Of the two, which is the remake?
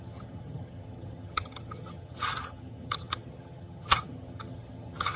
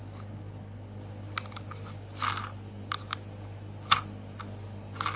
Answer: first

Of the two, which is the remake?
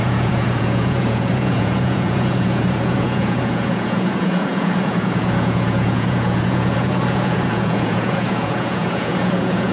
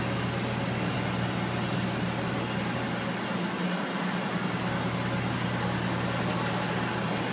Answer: first